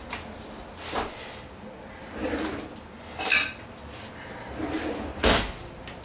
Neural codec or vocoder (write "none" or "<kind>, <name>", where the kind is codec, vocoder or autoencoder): none